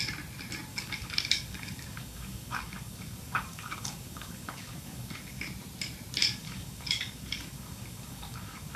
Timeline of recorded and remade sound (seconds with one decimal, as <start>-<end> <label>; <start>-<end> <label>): 0.0-0.7 recorded; 0.7-5.4 remade; 5.4-6.2 recorded; 6.2-8.8 remade